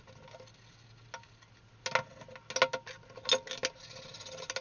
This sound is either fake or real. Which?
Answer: real